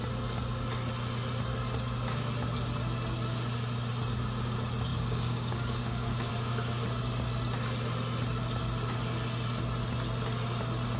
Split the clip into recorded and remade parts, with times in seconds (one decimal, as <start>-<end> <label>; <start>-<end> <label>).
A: 0.0-4.9 recorded; 4.9-6.3 remade; 6.3-11.0 recorded